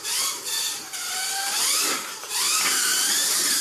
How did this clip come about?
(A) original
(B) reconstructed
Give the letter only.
B